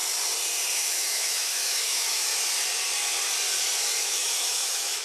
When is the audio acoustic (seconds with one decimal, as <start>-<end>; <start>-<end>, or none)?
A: 0.0-0.7; 2.3-4.0